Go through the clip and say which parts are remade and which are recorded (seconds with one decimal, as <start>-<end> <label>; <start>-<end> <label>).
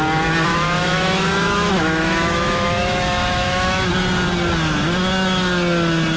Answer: 0.0-0.5 recorded; 0.5-3.9 remade; 3.9-6.2 recorded